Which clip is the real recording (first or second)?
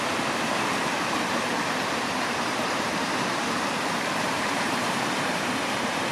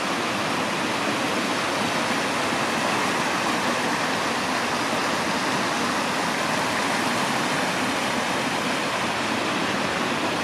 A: second